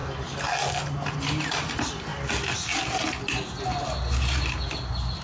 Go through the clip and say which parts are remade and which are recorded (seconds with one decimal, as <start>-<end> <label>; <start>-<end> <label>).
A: 0.0-5.2 recorded